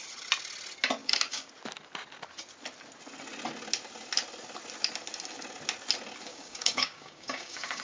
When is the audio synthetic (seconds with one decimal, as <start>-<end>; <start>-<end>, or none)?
1.0-1.5; 6.3-7.8